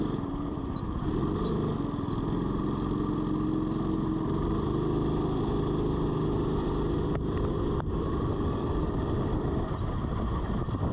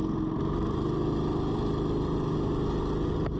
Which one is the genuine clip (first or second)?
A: second